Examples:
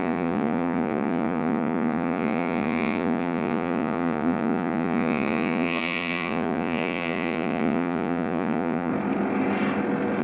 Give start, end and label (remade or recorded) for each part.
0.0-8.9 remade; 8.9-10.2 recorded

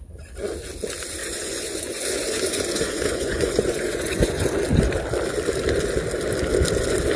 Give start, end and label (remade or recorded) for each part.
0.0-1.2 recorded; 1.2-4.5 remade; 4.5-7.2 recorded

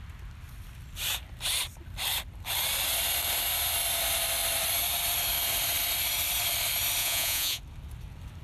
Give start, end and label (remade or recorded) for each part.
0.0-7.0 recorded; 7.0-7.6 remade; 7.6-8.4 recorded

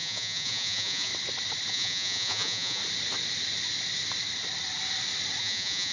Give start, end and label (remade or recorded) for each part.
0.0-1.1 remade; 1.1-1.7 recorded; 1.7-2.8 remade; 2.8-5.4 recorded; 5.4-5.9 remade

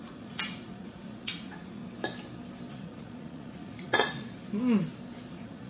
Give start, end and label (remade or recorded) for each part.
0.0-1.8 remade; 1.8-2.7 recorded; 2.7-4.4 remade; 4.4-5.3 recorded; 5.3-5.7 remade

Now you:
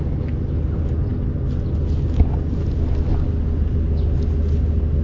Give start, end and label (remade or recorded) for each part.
0.0-5.0 recorded

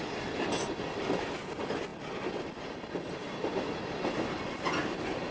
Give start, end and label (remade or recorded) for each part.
0.0-5.3 recorded